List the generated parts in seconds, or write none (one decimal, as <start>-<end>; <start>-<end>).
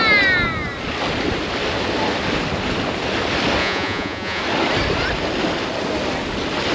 3.6-4.4